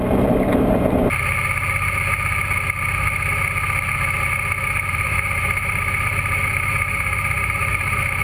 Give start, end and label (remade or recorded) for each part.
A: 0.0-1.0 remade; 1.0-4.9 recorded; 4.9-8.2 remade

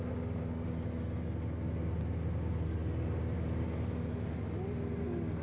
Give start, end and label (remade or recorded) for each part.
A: 0.0-5.4 recorded